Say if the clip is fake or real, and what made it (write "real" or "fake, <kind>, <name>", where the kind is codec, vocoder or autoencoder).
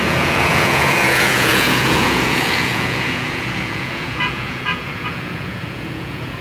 fake, vocoder, Vocos